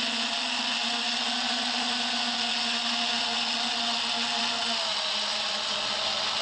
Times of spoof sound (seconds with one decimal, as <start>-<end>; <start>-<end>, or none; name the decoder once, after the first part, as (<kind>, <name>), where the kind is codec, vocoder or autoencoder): 4.9-5.5 (vocoder, BigVGAN v2)